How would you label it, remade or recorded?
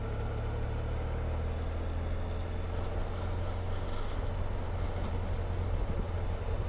recorded